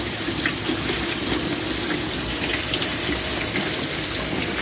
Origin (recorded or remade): recorded